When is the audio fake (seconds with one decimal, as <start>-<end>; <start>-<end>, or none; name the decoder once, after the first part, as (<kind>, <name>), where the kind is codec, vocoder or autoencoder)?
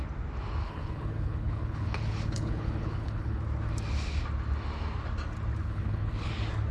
0.6-3.4 (codec, HILCodec); 5.6-6.3